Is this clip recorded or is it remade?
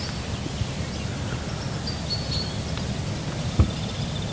recorded